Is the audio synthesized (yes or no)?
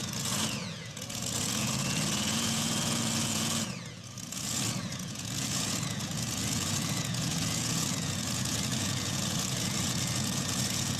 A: yes